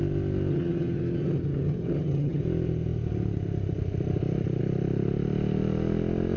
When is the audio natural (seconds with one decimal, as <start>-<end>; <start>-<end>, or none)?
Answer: 0.0-0.5; 2.4-6.4

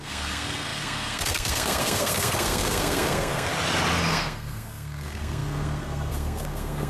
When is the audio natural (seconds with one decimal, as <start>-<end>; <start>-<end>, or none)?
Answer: 3.5-4.1

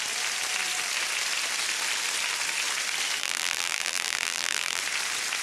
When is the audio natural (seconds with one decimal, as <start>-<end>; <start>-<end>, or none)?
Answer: 0.0-3.2; 4.8-5.4